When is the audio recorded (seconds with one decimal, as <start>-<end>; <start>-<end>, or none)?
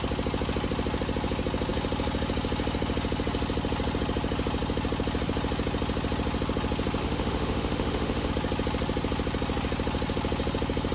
0.0-7.0; 8.3-10.9